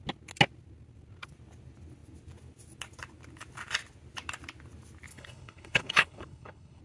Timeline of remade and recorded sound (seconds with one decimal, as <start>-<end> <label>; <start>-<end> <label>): 0.0-5.1 recorded; 5.1-6.8 remade